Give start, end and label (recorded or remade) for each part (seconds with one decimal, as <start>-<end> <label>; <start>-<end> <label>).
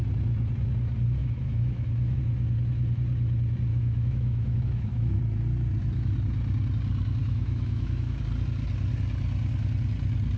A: 0.0-1.2 recorded; 1.2-2.2 remade; 2.2-3.7 recorded; 3.7-5.2 remade; 5.2-7.2 recorded; 7.2-8.2 remade; 8.2-10.4 recorded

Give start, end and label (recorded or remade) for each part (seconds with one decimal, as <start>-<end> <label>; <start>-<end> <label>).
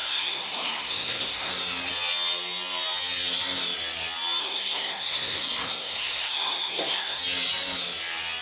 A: 0.0-1.5 remade; 1.5-4.4 recorded; 4.4-7.2 remade; 7.2-8.4 recorded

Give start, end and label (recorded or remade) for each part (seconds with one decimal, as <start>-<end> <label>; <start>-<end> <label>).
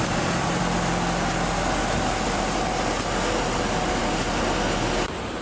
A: 0.0-0.6 remade; 0.6-5.4 recorded